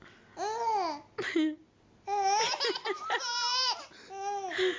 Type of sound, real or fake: real